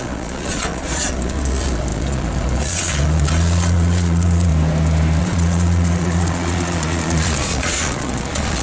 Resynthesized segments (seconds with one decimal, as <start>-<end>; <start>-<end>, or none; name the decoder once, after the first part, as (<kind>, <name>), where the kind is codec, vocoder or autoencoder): 0.0-4.5 (vocoder, Vocos); 5.2-8.6